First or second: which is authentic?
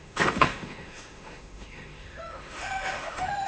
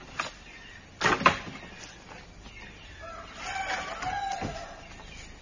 second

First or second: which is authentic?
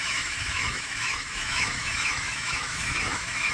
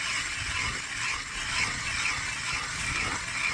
second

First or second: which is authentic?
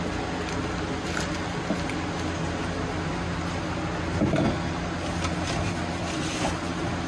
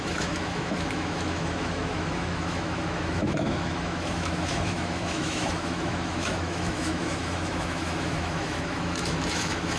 first